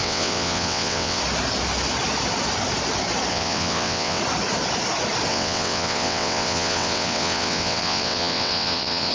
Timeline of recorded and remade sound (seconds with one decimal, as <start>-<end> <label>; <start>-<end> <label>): 0.0-1.2 remade; 1.2-3.3 recorded; 3.3-4.2 remade; 4.2-5.3 recorded; 5.3-9.1 remade